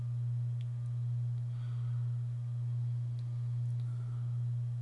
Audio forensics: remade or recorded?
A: recorded